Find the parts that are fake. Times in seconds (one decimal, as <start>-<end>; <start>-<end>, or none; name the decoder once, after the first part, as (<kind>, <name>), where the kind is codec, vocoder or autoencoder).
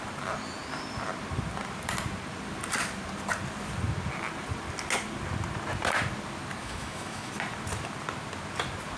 6.6-7.3 (autoencoder, DAC-VAE)